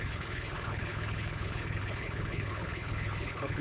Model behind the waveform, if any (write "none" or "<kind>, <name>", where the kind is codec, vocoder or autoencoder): codec, HILCodec